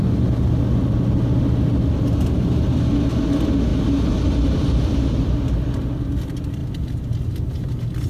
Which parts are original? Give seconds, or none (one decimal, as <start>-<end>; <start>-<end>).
0.0-8.1